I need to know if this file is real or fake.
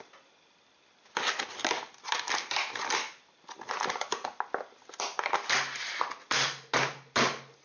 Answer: real